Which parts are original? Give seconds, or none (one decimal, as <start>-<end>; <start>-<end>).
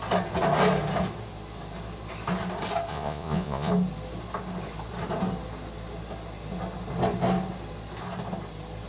0.0-2.9; 3.7-8.9